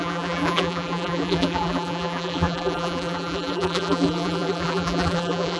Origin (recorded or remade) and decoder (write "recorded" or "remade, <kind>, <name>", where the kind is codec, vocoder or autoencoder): remade, vocoder, BigVGAN v2